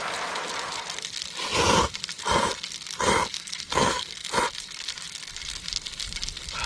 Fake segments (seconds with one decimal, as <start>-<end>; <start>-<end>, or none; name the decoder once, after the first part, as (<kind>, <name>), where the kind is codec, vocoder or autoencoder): 3.3-4.3 (codec, SNAC)